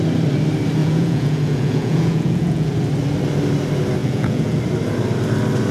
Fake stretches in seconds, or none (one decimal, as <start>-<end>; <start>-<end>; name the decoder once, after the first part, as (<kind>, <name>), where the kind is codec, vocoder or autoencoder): 0.8-2.7 (vocoder, Vocos); 4.0-4.6